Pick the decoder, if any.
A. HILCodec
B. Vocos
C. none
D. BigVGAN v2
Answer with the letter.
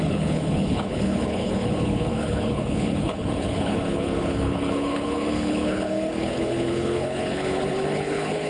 A